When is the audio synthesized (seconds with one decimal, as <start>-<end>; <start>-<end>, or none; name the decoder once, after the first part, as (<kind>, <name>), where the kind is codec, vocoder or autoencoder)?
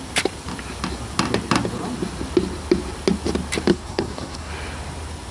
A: 3.7-4.5 (codec, SNAC)